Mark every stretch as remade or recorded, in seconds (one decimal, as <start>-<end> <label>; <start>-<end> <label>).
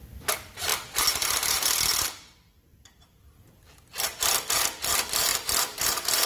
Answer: 0.0-2.7 recorded; 2.7-4.5 remade; 4.5-5.3 recorded; 5.3-6.3 remade